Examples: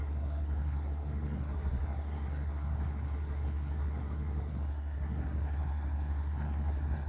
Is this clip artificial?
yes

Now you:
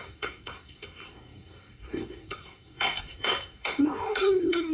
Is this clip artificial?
yes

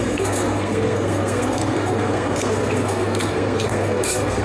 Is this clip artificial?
yes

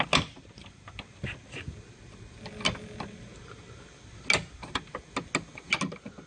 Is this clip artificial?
no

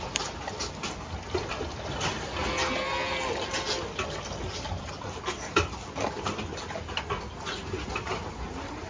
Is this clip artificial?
no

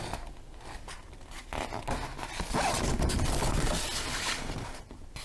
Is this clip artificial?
no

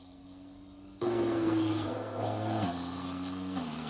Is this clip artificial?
yes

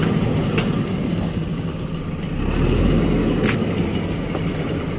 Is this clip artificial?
no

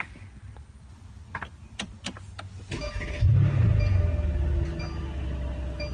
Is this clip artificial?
no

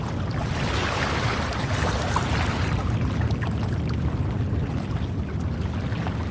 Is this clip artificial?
no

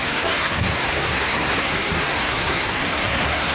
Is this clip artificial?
yes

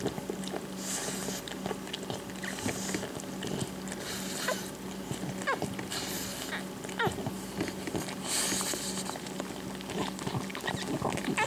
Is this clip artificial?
no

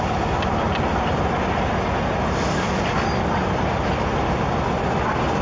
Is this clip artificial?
no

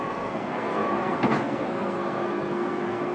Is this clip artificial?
yes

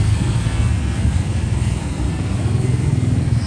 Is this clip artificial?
yes